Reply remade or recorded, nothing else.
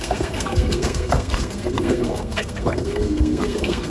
remade